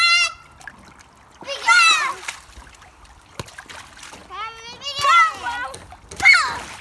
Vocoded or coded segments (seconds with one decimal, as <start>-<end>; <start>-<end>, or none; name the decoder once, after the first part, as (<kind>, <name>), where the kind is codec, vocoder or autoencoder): none